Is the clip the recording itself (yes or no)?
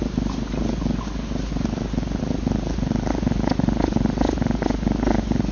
yes